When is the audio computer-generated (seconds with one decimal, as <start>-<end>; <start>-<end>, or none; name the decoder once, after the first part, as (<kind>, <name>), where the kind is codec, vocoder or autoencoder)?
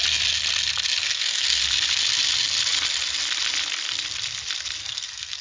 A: 1.0-1.6 (codec, SNAC); 4.8-5.4